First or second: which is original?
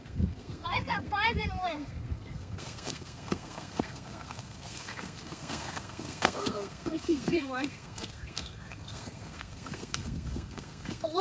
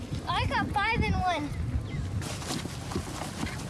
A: second